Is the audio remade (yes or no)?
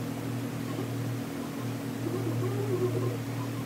no